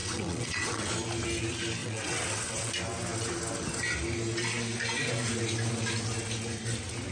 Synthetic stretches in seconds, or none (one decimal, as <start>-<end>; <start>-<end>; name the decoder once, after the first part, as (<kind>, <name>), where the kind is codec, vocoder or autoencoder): 0.0-0.9 (vocoder, WaveNeXt); 1.8-2.7

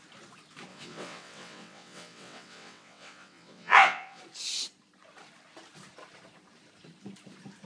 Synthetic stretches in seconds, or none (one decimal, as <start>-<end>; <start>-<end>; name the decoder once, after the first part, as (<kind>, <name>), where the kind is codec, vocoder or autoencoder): 0.7-4.2 (vocoder, WaveNeXt)